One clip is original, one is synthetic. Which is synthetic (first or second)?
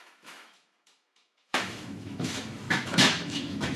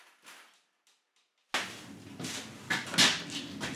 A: first